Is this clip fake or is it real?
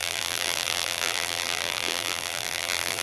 fake